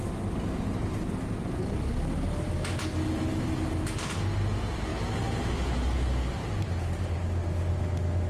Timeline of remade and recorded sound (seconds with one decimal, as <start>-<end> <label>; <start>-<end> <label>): 0.0-8.3 recorded